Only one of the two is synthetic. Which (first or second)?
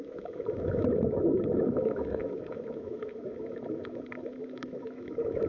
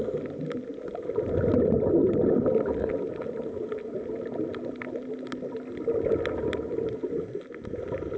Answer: first